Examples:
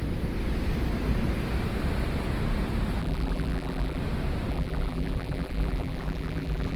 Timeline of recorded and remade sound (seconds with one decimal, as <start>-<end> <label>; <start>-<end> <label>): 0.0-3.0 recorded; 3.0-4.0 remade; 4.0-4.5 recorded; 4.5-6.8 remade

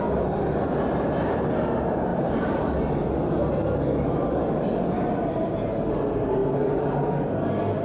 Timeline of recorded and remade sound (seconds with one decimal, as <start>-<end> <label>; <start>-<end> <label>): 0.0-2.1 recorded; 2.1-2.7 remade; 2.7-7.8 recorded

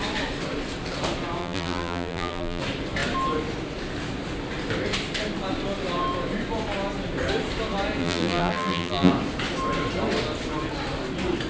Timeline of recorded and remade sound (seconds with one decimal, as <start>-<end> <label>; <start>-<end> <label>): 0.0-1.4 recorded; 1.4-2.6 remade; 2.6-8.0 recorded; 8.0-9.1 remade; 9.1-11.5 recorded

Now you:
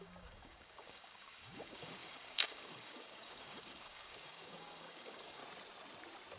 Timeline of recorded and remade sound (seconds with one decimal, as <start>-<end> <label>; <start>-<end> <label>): 0.0-5.4 remade; 5.4-6.4 recorded

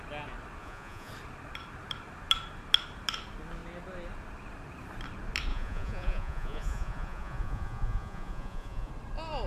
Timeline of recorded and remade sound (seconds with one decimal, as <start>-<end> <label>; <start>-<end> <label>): 0.0-0.6 recorded; 0.6-1.1 remade; 1.1-5.5 recorded; 5.5-8.9 remade; 8.9-9.5 recorded

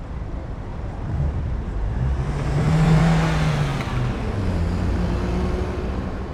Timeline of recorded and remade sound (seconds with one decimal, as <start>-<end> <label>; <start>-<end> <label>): 0.0-0.7 recorded; 0.7-3.0 remade; 3.0-6.3 recorded

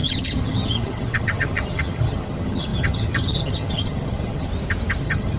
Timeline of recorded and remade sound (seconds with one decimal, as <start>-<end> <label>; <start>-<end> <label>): 0.0-4.5 remade; 4.5-5.0 recorded; 5.0-5.4 remade